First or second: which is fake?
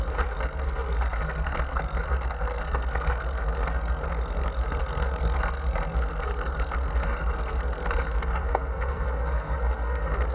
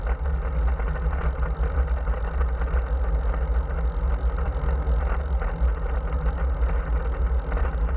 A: first